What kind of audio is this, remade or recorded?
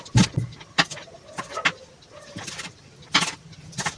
recorded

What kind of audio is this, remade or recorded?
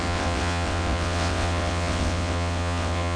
remade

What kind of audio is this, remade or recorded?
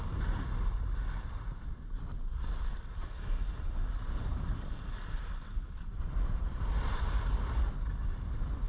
recorded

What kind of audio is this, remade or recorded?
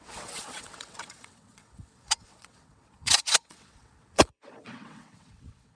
remade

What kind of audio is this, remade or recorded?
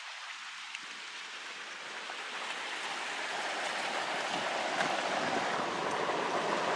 recorded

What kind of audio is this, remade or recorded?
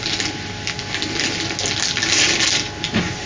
recorded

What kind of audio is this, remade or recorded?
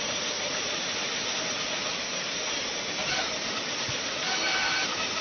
recorded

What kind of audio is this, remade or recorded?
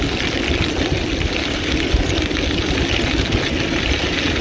recorded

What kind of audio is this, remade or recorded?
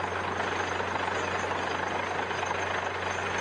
recorded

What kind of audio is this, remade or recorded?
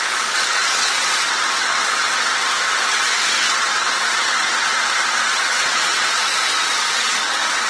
remade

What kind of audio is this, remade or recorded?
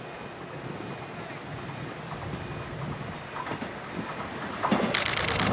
recorded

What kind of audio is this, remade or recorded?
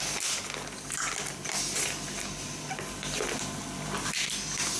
recorded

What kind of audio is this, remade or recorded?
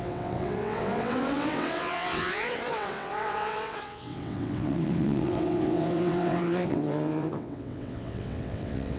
remade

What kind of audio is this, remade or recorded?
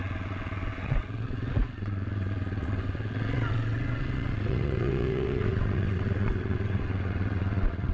remade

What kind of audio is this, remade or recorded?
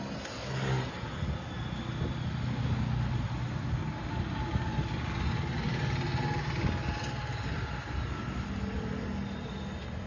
recorded